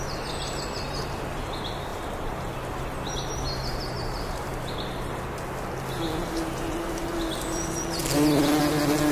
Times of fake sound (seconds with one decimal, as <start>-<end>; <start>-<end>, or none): 1.9-5.2